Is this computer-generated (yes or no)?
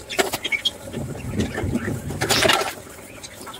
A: yes